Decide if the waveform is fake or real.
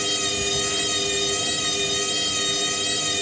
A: real